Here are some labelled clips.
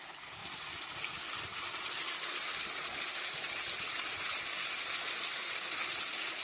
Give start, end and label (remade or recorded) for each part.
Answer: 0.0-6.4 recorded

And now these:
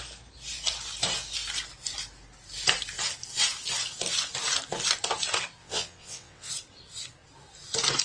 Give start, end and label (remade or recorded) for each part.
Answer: 0.0-5.6 recorded; 5.6-6.5 remade; 6.5-8.0 recorded

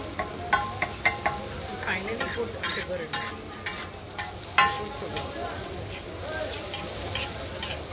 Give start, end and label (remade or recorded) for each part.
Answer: 0.0-7.9 recorded

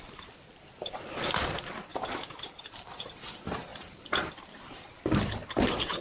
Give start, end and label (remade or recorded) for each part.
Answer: 0.0-6.0 recorded

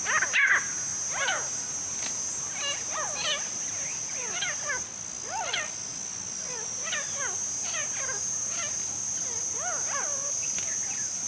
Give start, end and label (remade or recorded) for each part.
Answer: 0.0-11.3 recorded